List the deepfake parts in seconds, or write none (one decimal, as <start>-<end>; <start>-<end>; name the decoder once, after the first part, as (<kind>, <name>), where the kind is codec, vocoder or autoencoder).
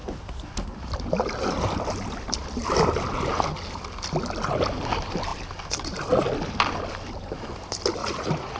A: 8.0-8.6 (vocoder, Vocos)